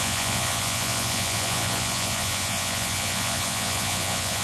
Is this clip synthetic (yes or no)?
yes